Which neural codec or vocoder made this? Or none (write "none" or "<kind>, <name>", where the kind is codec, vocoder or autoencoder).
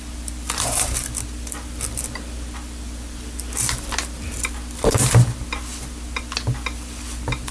vocoder, BigVGAN v2